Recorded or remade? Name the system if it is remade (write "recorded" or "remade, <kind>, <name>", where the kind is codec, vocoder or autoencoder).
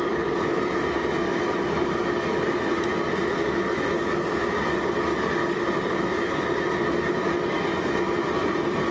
recorded